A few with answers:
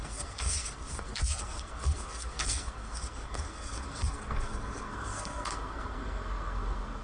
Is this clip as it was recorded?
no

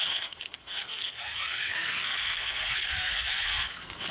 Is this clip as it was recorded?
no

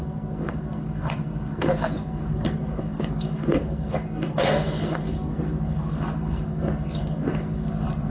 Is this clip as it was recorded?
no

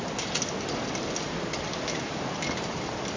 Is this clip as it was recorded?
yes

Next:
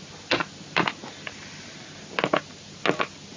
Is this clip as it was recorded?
yes